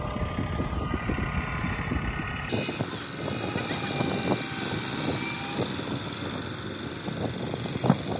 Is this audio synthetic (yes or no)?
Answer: no